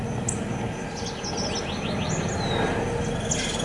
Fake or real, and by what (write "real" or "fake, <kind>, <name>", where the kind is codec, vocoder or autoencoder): real